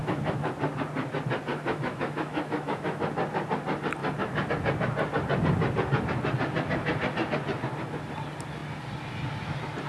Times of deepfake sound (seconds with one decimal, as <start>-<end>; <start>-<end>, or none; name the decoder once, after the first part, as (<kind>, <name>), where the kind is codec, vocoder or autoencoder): 0.0-0.5 (autoencoder, DAC-VAE); 1.5-3.0